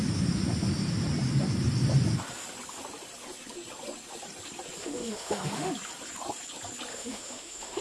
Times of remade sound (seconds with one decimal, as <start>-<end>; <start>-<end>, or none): 4.8-5.7; 6.9-7.8